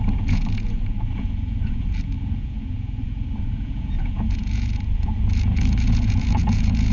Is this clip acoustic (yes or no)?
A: no